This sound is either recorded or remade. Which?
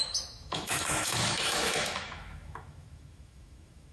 remade